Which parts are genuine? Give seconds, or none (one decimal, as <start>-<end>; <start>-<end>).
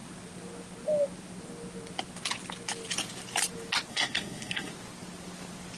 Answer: 0.0-3.9; 4.7-5.8